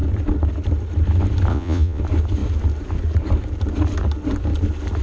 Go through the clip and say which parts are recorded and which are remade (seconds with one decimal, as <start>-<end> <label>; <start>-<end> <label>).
0.0-1.5 recorded; 1.5-2.0 remade; 2.0-5.0 recorded